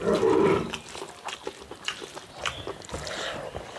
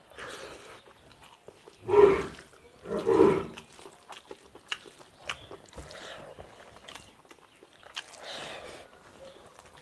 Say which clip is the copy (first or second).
first